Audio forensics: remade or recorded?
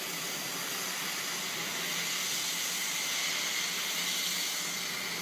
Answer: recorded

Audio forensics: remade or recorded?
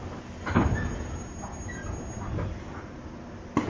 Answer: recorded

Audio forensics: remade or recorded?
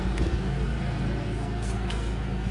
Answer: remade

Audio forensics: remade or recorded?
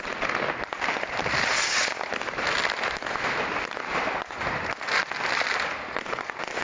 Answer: recorded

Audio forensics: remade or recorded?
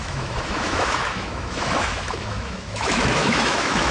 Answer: remade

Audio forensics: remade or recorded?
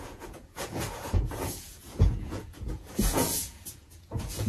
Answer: remade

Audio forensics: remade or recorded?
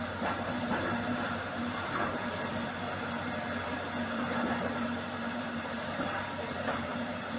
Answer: remade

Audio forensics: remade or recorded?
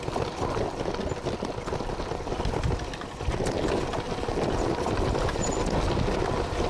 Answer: recorded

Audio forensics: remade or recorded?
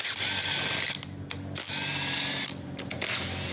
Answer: recorded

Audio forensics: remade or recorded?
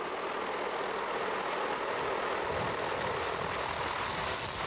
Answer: recorded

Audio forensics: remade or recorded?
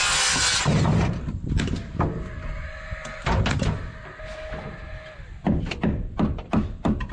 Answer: recorded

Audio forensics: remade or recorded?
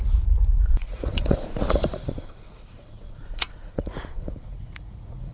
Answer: remade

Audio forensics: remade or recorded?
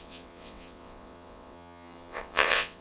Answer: remade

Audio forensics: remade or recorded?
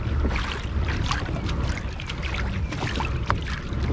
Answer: recorded